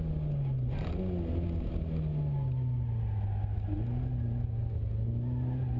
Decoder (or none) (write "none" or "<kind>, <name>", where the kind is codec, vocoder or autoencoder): none